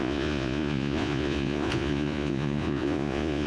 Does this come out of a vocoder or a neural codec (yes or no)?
yes